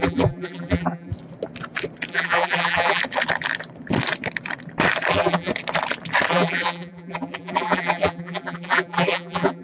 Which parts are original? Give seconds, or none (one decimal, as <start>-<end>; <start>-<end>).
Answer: 1.1-2.1; 3.0-5.1; 5.5-6.3